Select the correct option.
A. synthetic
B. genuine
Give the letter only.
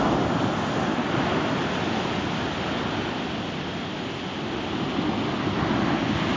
B